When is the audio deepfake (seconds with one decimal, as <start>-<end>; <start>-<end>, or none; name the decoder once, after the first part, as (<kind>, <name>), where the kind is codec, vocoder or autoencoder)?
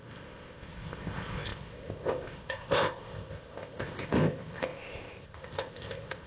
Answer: 0.0-6.3 (codec, ZipCodec)